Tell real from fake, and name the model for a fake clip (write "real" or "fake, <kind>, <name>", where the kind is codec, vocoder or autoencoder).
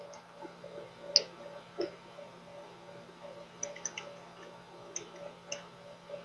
real